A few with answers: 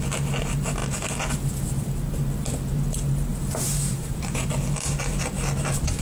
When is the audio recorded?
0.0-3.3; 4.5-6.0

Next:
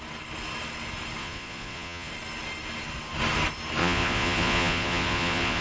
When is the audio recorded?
0.0-1.2; 2.1-3.8

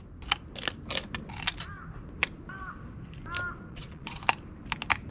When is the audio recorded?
0.0-3.7; 4.2-5.1

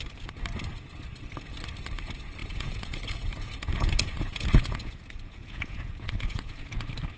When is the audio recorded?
0.0-2.4; 6.6-7.2

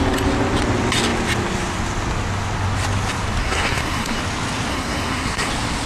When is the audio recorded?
0.0-3.4; 4.2-4.7; 5.5-5.9